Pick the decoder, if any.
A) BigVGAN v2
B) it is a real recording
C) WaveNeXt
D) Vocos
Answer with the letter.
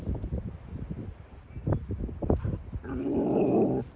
B